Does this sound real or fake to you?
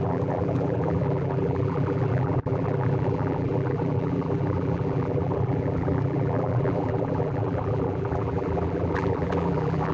fake